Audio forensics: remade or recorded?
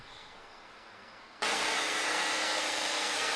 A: remade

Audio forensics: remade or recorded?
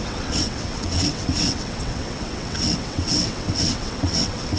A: remade